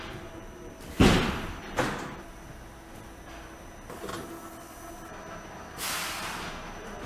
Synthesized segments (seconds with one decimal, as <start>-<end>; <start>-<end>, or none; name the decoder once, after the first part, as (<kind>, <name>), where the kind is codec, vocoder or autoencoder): 0.0-1.0 (vocoder, BigVGAN v2); 3.6-4.1; 5.2-7.1